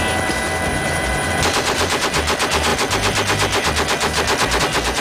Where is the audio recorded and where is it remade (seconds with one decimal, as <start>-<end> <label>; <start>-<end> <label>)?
0.0-0.7 recorded; 0.7-1.3 remade; 1.3-5.0 recorded

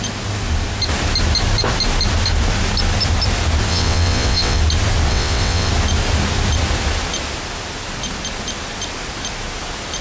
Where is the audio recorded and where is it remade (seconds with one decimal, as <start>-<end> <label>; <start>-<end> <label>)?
0.0-3.7 recorded; 3.7-4.6 remade; 4.6-5.1 recorded; 5.1-5.7 remade; 5.7-10.0 recorded